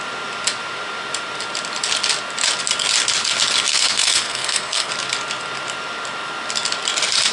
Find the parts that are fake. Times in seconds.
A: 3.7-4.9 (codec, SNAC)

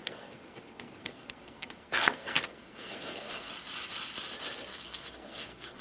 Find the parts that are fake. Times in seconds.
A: 0.0-3.5 (codec, SNAC); 4.7-5.8

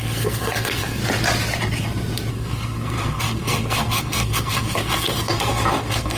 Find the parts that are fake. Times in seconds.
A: 0.0-1.0 (codec, SNAC); 2.3-6.2

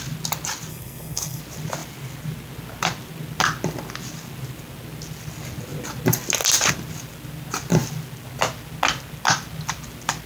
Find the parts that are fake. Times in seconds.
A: 0.7-1.4 (codec, SNAC)

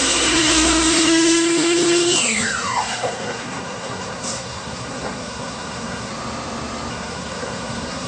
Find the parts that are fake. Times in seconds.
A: 0.0-6.1 (codec, SNAC); 6.9-8.1